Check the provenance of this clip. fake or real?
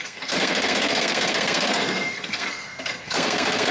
fake